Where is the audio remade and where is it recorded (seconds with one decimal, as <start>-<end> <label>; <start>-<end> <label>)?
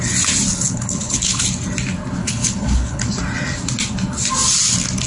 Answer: 0.0-0.5 recorded; 0.5-1.4 remade; 1.4-2.2 recorded; 2.2-3.1 remade; 3.1-5.1 recorded